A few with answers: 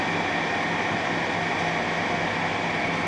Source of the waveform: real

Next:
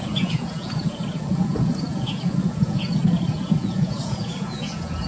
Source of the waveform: fake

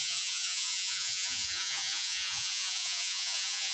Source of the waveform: fake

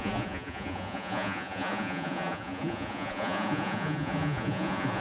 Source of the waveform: fake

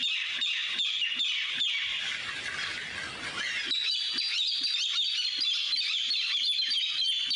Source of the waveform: real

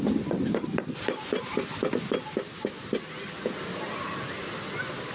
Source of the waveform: real